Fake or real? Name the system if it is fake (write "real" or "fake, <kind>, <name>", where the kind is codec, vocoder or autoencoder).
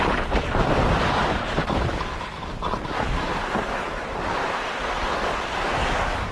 real